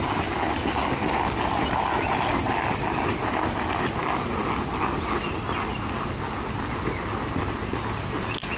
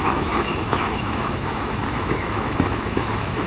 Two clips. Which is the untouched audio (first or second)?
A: first